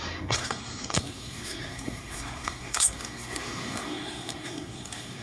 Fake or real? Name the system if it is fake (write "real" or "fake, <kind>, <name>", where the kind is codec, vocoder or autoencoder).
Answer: fake, codec, SNAC